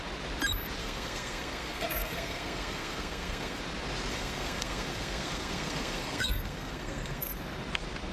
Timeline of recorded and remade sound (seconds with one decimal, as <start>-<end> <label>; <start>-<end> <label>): 0.0-0.8 recorded; 0.8-3.6 remade; 3.6-4.1 recorded; 4.1-7.3 remade; 7.3-8.1 recorded